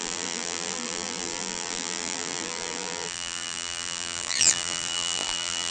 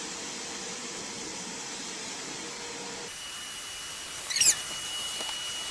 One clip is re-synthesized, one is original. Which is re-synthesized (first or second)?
first